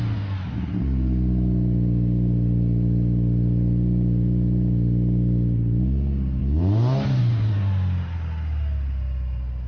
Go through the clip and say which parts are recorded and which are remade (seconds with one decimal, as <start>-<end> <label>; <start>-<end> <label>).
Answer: 0.0-9.7 recorded